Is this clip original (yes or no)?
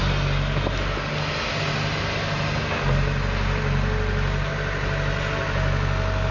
yes